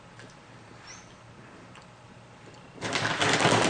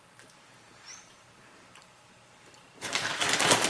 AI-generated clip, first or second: second